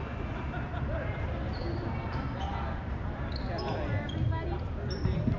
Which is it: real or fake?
real